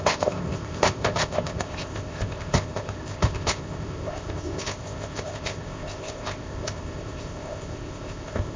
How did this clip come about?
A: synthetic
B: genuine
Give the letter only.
A